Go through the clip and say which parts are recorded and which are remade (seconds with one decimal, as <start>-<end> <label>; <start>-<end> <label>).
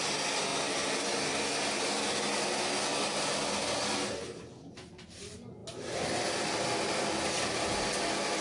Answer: 0.0-8.4 recorded